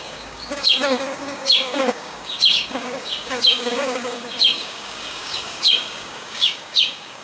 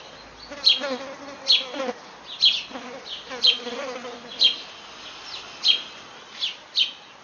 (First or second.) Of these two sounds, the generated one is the first